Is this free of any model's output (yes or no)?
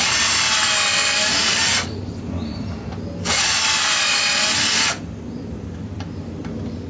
yes